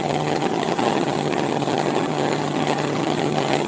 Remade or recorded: remade